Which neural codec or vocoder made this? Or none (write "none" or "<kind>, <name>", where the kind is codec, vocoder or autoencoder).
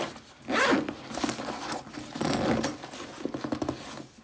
none